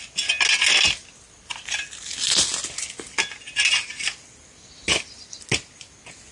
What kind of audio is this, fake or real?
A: real